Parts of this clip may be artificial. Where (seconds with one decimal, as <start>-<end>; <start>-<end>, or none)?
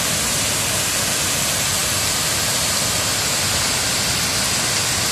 none